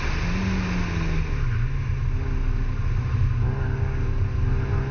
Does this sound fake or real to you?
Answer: real